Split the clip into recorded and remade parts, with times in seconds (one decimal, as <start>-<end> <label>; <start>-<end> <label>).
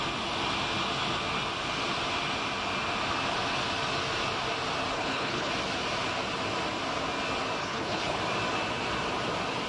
0.0-4.9 recorded; 4.9-5.5 remade; 5.5-7.6 recorded; 7.6-8.2 remade; 8.2-9.7 recorded